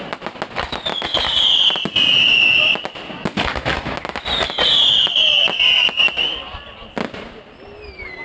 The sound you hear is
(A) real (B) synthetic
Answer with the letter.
A